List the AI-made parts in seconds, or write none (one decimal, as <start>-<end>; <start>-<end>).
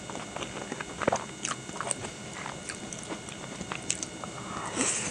2.0-4.4